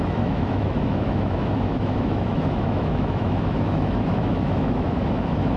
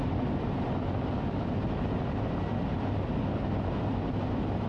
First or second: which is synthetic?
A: first